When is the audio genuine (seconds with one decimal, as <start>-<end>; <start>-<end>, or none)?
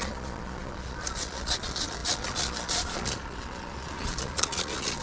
none